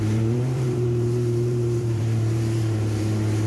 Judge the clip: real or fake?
fake